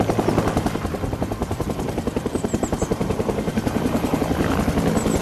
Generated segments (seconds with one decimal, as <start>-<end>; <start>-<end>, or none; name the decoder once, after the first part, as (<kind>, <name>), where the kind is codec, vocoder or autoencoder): 1.4-4.2 (vocoder, BigVGAN v2)